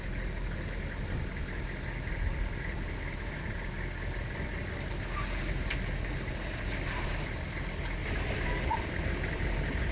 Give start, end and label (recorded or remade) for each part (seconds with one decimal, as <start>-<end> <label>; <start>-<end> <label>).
0.0-8.0 recorded; 8.0-9.5 remade; 9.5-9.9 recorded